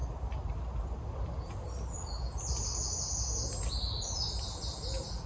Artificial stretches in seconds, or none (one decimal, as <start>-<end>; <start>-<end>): none